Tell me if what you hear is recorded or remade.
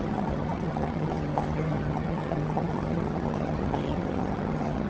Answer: remade